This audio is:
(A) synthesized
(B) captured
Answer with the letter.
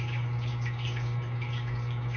A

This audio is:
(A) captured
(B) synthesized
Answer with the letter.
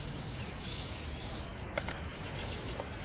B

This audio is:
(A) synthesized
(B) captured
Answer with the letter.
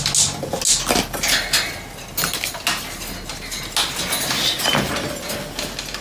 B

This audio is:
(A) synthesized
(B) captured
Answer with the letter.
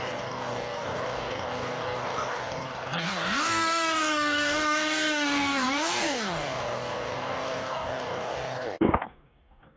A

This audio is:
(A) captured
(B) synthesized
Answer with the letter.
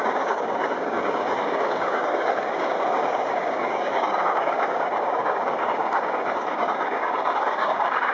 B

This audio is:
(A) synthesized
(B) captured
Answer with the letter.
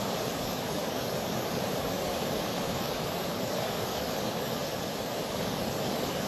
A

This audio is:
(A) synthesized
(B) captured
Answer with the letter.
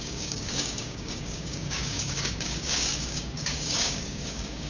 A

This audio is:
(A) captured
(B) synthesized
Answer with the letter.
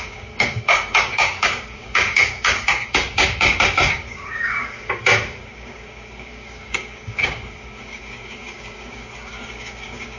B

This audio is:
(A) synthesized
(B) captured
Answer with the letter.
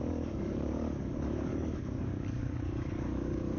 A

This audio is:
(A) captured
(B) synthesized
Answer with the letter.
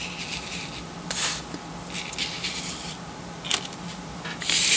A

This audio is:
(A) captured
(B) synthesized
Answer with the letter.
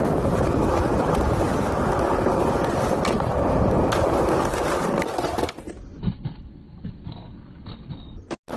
A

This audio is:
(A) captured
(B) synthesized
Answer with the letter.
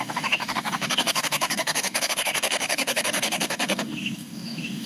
B